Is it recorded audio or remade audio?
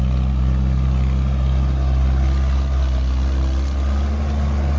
recorded